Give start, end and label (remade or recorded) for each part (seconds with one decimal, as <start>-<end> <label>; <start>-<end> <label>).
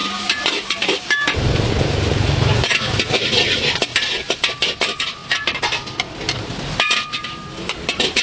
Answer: 0.0-2.7 remade; 2.7-7.2 recorded; 7.2-8.2 remade